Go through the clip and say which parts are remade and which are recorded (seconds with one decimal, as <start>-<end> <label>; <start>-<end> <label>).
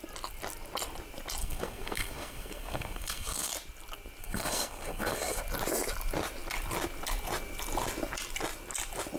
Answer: 0.0-1.4 recorded; 1.4-3.5 remade; 3.5-4.2 recorded; 4.2-5.4 remade; 5.4-9.2 recorded